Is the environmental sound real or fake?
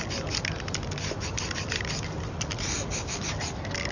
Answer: real